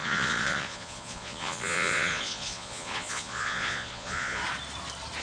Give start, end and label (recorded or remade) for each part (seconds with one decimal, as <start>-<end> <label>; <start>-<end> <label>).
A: 0.0-4.4 remade; 4.4-5.2 recorded